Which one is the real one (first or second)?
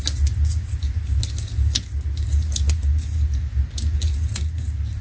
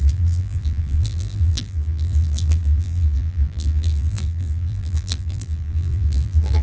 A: first